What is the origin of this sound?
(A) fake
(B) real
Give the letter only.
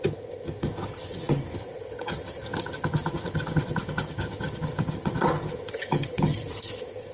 A